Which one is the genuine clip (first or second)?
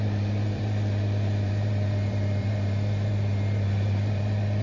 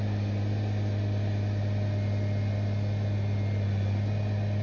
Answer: second